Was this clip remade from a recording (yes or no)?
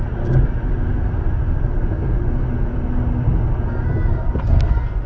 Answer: no